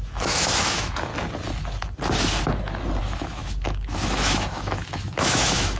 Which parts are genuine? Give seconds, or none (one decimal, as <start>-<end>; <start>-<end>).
1.1-3.0

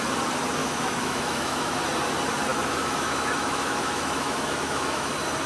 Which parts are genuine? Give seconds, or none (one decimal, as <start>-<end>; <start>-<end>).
0.0-0.6; 1.8-2.5; 5.1-5.5

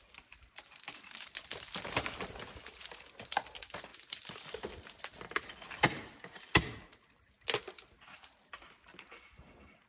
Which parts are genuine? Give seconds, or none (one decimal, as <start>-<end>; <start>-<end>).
0.0-9.9

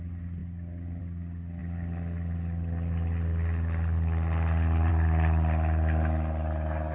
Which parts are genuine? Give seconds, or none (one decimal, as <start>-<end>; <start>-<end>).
0.0-6.9

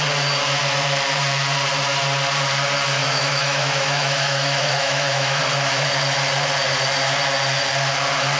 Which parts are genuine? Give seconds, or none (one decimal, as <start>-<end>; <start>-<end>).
0.0-3.0; 5.4-8.4

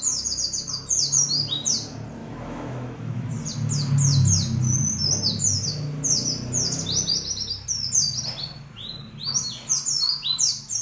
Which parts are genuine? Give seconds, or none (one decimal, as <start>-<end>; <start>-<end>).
0.0-2.2; 3.3-10.8

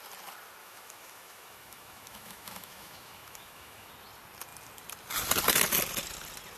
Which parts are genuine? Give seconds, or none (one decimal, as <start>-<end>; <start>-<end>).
0.0-0.6; 3.9-6.6